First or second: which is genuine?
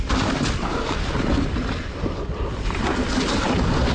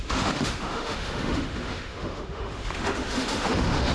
first